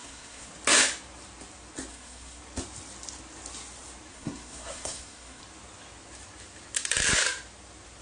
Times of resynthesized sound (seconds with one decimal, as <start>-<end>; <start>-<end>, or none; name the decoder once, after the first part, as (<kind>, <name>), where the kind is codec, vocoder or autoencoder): 0.0-0.5 (codec, SNAC); 1.9-2.4; 4.1-5.4

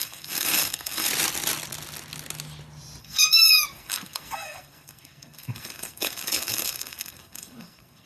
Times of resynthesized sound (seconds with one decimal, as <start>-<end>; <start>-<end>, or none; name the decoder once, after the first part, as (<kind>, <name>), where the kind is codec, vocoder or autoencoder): 0.0-1.1 (codec, SNAC); 3.0-8.1

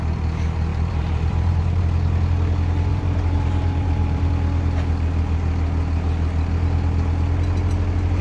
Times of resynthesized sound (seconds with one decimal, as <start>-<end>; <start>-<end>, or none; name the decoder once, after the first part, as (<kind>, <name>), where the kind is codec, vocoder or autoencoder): 0.7-1.8 (vocoder, BigVGAN v2); 2.9-4.3

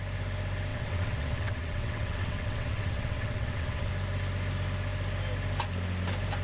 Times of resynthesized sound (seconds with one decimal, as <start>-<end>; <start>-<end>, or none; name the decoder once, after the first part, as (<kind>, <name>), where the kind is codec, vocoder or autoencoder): 0.7-3.9 (vocoder, WaveNeXt)